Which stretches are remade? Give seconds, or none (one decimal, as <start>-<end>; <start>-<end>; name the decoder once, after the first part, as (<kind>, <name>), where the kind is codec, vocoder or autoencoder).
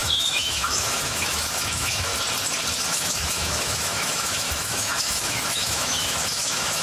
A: 0.0-2.1 (autoencoder, DAC-VAE); 2.9-6.8